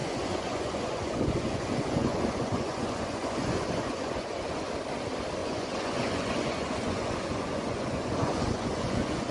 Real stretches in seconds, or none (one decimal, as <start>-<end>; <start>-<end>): 4.7-5.4